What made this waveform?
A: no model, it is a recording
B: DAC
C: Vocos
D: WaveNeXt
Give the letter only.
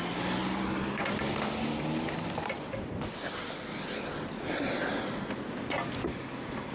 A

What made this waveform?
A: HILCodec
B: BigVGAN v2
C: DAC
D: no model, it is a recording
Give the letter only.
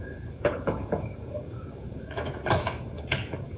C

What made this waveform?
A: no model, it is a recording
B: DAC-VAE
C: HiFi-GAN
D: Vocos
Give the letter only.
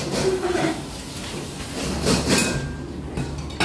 A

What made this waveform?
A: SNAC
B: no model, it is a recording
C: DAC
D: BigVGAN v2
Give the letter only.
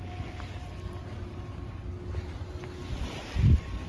B